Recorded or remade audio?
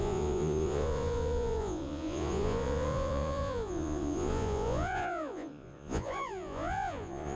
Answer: remade